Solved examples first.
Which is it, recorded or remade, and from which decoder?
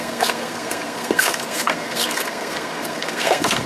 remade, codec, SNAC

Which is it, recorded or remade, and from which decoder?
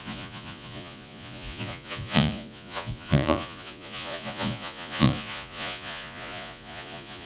remade, vocoder, Vocos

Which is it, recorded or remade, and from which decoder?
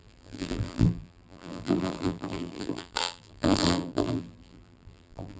remade, vocoder, BigVGAN v2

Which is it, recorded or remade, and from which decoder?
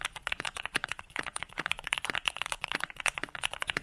remade, vocoder, Vocos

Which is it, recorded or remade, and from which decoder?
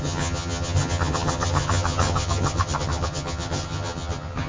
remade, vocoder, HiFi-GAN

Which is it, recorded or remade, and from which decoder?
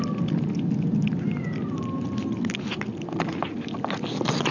recorded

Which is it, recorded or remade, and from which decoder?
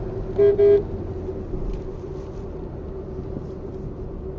recorded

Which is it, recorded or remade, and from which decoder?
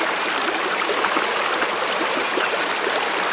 remade, vocoder, BigVGAN v2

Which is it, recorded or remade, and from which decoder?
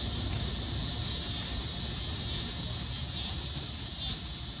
recorded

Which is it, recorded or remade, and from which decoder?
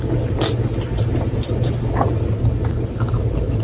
recorded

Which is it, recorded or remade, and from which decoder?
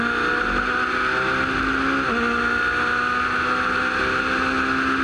recorded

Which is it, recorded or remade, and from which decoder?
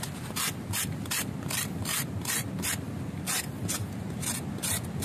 recorded